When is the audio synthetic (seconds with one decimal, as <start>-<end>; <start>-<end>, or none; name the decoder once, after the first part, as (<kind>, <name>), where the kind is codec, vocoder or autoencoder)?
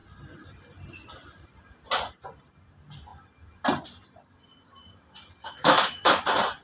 5.4-6.1 (autoencoder, DAC-VAE)